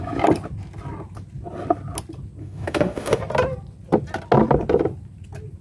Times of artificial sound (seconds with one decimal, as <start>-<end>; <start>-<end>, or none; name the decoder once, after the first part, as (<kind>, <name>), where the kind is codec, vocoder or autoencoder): 2.4-3.2 (autoencoder, DAC-VAE)

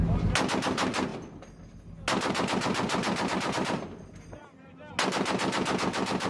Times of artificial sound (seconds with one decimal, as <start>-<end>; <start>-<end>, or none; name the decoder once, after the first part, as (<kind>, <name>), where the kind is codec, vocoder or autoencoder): none

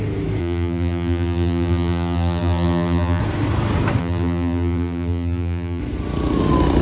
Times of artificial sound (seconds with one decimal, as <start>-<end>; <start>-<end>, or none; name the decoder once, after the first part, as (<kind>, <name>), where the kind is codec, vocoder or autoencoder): 0.4-3.2 (vocoder, BigVGAN v2); 4.0-5.8

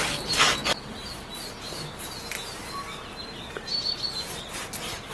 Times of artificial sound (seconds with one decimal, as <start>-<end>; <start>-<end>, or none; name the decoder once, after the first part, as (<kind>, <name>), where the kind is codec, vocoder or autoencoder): none

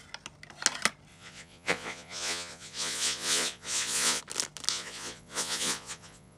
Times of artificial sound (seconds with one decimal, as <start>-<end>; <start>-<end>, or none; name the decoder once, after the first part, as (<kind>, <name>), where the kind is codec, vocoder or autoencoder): 1.1-4.2 (vocoder, Vocos); 4.7-6.4

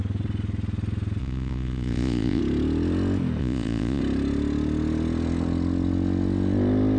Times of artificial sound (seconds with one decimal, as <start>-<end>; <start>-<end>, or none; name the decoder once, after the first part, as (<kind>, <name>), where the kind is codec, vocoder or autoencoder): 1.2-2.4 (vocoder, Vocos); 3.4-4.0

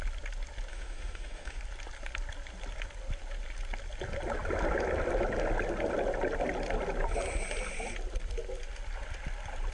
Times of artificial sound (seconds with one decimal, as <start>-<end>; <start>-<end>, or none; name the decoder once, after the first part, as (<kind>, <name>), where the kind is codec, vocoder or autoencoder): 0.7-1.6 (autoencoder, DAC-VAE)